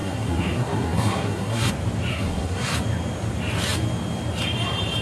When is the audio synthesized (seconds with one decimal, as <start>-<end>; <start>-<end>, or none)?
0.0-1.7; 2.1-2.8